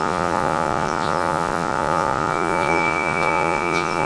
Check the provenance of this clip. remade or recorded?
remade